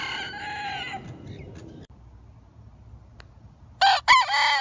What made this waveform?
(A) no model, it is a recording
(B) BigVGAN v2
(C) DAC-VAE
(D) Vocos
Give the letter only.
A